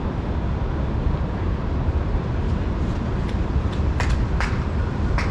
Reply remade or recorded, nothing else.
remade